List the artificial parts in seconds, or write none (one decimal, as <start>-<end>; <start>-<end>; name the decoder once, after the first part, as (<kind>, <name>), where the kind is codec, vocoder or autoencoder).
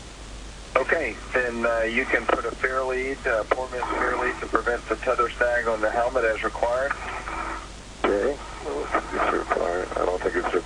9.4-10.2 (autoencoder, DAC-VAE)